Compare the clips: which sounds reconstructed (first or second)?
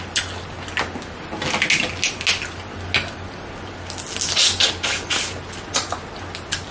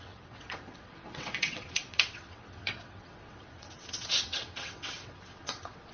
second